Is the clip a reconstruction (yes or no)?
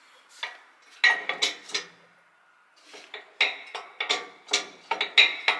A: no